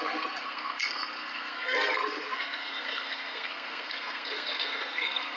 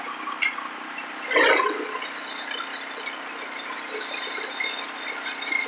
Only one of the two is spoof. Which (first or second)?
first